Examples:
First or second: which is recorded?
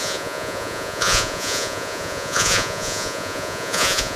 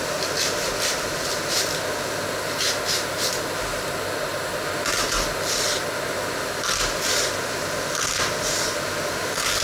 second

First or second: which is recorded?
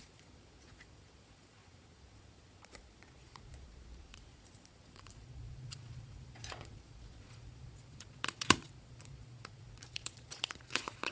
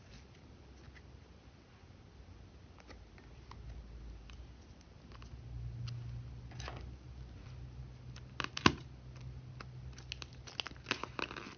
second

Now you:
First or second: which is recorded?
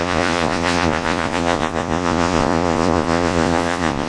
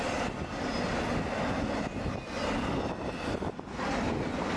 second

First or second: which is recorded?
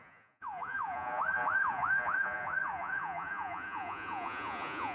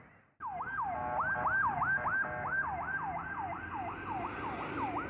second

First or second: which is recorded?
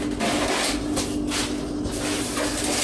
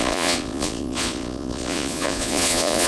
first